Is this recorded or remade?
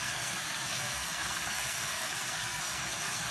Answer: remade